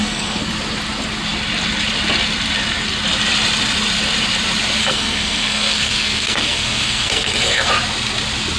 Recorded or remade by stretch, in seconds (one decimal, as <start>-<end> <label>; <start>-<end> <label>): 0.0-0.5 remade; 0.5-4.8 recorded; 4.8-7.7 remade; 7.7-8.6 recorded